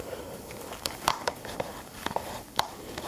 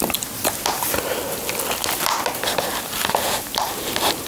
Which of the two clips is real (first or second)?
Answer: second